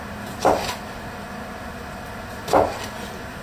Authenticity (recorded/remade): recorded